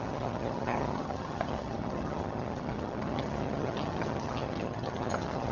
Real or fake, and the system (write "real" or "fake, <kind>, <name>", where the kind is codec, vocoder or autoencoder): fake, vocoder, HiFi-GAN